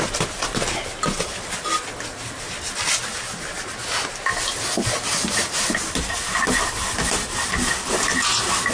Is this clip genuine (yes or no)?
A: yes